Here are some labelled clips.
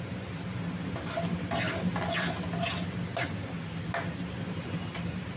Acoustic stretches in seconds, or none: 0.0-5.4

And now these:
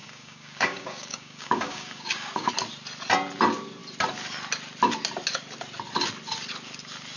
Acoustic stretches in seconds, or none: 2.5-7.2